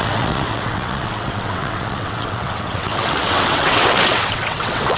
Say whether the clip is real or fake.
fake